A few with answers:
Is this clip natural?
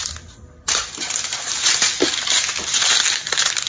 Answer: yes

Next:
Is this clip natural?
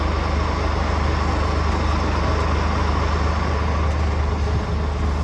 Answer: yes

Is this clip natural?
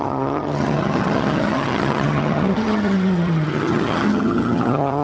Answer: no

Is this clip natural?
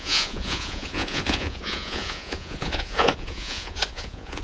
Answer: no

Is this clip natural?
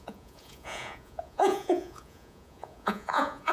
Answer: no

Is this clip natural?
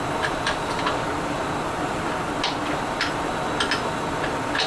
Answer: yes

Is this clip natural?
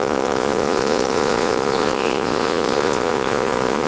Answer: no